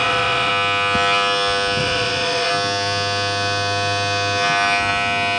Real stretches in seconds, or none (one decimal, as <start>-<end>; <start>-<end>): 0.5-1.8; 2.5-5.4